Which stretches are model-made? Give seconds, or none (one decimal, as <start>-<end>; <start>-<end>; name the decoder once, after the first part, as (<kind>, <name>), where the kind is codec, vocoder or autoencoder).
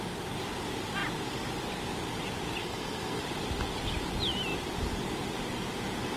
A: 2.6-3.2 (codec, SNAC)